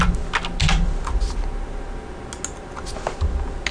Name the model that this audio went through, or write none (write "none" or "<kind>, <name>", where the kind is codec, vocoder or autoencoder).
none